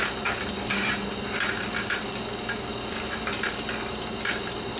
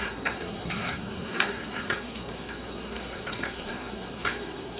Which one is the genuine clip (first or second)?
first